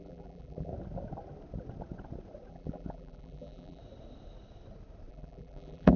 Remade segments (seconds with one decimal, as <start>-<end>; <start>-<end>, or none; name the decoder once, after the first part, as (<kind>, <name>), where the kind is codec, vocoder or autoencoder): 0.0-0.7 (vocoder, BigVGAN v2); 2.5-3.8; 5.1-6.0